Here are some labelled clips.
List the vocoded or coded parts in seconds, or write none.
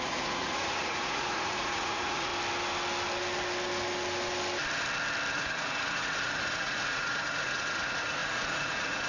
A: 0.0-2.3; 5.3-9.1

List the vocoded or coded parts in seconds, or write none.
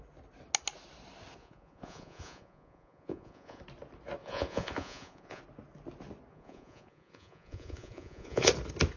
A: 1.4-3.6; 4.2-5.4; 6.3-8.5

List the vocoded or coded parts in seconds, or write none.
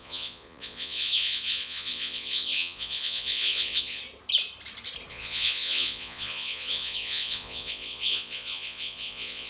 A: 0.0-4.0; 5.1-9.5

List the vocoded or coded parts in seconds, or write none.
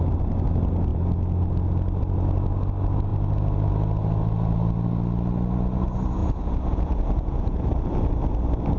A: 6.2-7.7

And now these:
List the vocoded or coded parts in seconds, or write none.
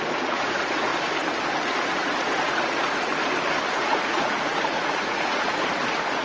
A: 0.0-0.9; 1.6-3.1; 3.7-6.2